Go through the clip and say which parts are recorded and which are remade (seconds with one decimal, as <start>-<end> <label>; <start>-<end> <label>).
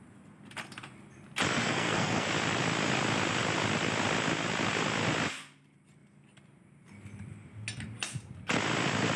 0.0-1.5 recorded; 1.5-2.3 remade; 2.3-9.2 recorded